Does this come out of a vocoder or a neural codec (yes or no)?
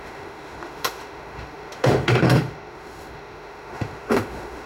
yes